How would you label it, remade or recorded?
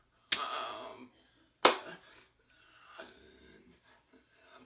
recorded